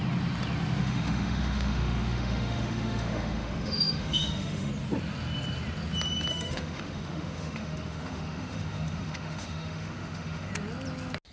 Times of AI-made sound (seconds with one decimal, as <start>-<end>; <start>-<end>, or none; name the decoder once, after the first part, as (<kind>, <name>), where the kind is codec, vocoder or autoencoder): 0.8-4.7 (autoencoder, DAC-VAE); 6.3-10.5